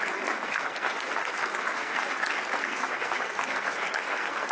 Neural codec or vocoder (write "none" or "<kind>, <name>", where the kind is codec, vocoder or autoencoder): codec, SNAC